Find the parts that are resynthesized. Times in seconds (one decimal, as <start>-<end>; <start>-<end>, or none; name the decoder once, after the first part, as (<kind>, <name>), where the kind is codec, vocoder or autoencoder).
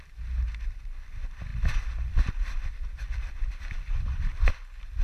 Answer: 1.5-4.5 (vocoder, BigVGAN v2)